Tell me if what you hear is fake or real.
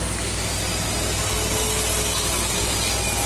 real